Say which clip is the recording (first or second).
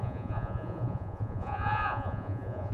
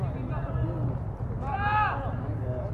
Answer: second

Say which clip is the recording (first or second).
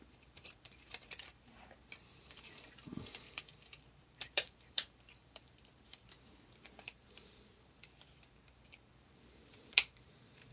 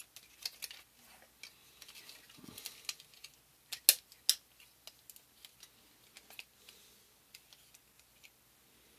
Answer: second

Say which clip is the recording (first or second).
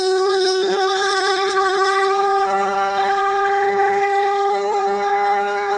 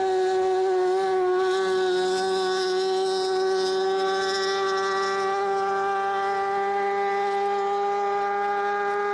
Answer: second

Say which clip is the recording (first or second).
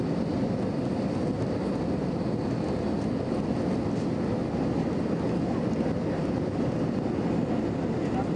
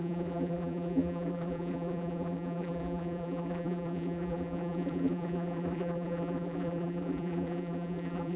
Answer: first